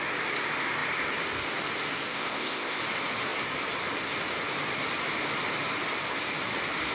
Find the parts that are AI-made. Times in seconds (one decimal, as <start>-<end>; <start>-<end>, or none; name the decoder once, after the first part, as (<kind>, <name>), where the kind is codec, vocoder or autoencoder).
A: 2.1-2.8 (codec, ZipCodec)